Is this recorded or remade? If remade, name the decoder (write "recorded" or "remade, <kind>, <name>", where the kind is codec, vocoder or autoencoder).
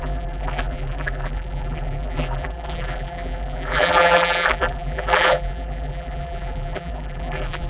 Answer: remade, vocoder, BigVGAN v2